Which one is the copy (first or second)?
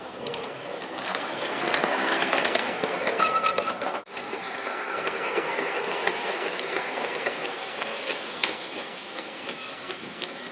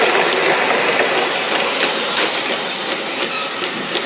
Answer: first